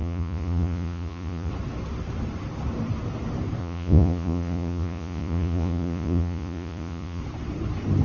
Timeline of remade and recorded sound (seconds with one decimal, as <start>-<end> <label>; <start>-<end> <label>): 0.0-1.5 remade; 1.5-3.6 recorded; 3.6-7.2 remade; 7.2-8.0 recorded